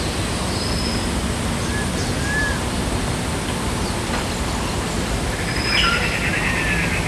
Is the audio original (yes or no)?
yes